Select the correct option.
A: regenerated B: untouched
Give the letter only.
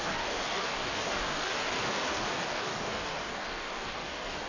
A